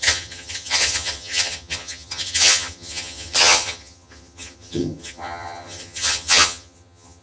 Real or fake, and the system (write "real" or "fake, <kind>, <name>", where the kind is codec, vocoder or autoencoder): fake, vocoder, HiFi-GAN